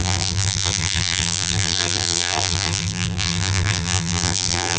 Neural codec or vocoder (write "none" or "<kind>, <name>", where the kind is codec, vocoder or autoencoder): vocoder, BigVGAN v2